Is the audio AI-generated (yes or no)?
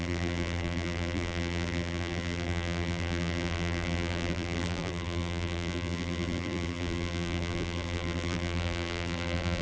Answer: yes